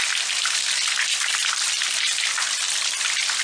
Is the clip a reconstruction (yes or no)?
no